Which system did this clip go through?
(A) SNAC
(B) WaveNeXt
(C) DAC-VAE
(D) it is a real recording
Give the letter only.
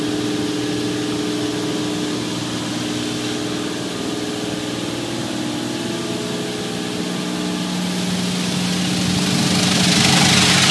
D